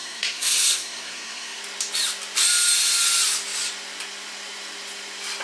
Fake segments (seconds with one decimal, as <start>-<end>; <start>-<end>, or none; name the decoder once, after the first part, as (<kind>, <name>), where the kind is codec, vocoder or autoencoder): 0.0-1.6 (codec, SNAC)